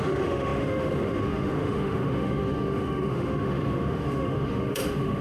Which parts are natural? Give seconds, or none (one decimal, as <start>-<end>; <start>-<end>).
none